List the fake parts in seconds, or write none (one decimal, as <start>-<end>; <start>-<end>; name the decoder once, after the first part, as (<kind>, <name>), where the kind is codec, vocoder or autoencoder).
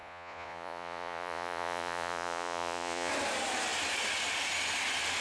0.0-3.1 (vocoder, Vocos)